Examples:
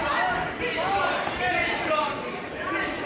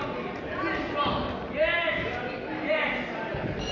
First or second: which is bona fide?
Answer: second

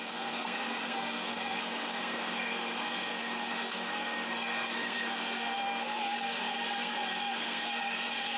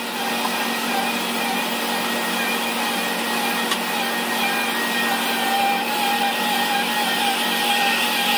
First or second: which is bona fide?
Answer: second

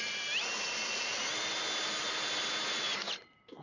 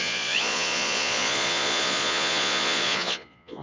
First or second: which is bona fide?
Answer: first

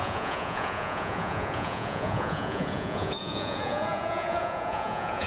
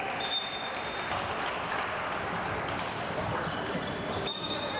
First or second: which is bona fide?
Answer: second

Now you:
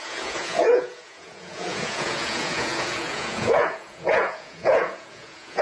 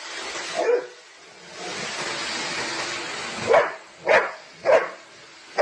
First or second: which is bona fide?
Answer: second